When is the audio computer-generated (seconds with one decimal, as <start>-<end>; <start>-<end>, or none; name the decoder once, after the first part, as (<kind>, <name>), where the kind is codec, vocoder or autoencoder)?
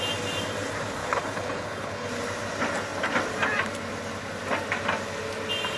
1.0-2.1 (codec, HILCodec)